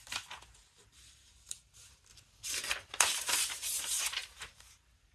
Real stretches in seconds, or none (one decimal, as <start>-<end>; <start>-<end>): 2.1-3.0